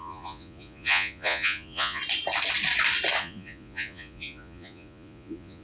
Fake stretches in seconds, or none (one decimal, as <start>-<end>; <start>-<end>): 0.0-2.0; 3.2-5.6